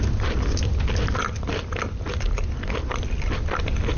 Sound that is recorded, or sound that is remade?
recorded